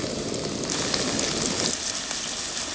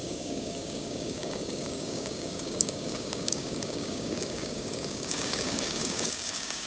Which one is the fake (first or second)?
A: second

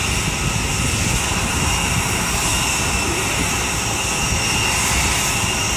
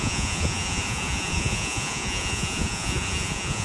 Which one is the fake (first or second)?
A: second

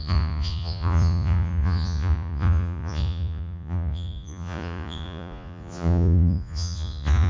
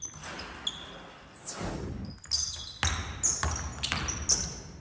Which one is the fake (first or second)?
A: first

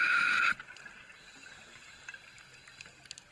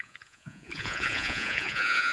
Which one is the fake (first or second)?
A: second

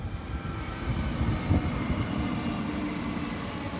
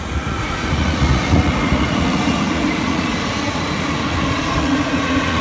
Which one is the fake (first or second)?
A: second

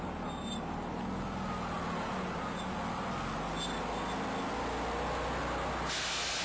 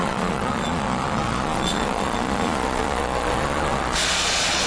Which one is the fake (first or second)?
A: second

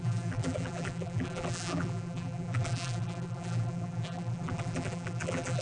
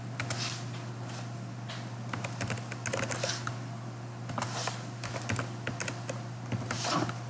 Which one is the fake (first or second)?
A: first